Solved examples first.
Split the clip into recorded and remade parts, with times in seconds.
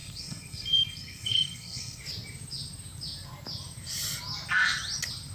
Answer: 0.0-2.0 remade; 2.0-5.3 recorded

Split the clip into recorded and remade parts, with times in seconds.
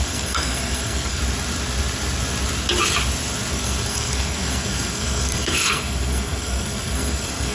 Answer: 0.0-1.2 remade; 1.2-3.5 recorded; 3.5-7.5 remade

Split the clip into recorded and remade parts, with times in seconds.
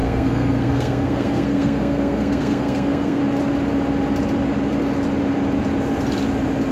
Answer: 0.0-3.2 remade; 3.2-6.7 recorded